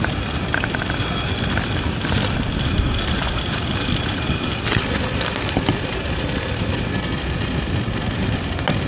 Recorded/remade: recorded